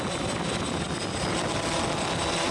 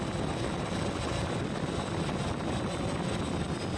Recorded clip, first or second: second